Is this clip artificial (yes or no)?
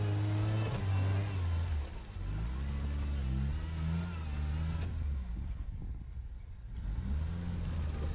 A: no